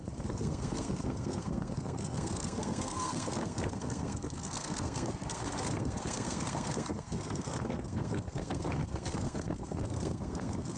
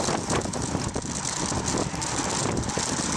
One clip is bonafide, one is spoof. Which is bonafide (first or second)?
second